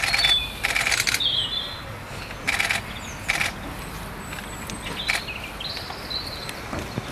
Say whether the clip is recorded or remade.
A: recorded